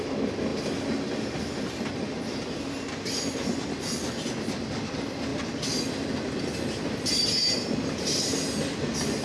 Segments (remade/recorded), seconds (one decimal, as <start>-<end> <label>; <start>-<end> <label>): 0.0-9.2 recorded